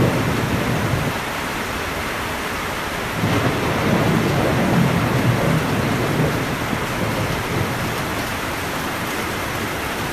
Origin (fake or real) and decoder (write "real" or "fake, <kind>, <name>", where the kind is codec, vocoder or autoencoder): real